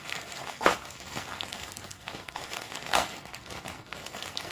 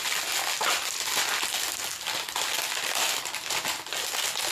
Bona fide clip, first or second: second